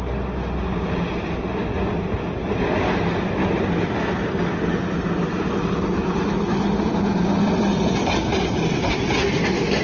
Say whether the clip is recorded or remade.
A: recorded